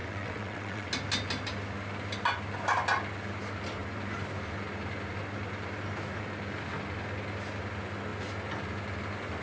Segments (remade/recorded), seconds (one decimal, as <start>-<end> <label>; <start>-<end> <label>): 0.0-0.9 remade; 0.9-9.4 recorded